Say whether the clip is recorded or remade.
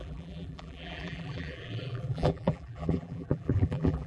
remade